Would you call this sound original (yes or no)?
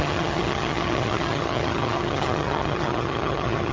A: no